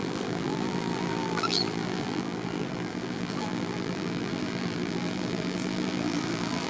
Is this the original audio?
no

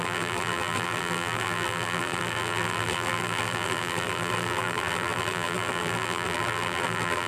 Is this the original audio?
no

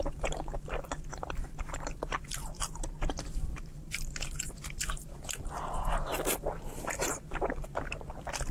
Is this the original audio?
no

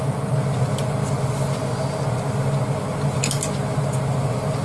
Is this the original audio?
yes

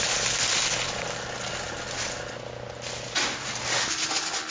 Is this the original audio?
yes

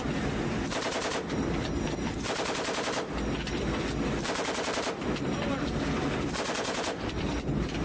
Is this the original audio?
no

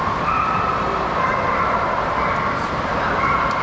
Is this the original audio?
yes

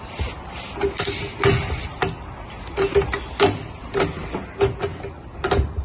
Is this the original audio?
yes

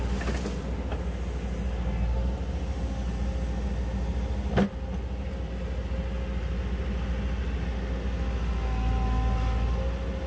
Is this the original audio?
yes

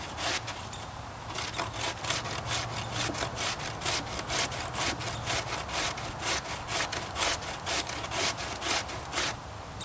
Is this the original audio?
yes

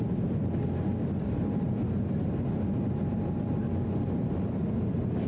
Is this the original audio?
yes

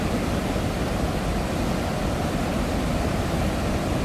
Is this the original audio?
yes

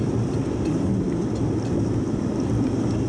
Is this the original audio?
no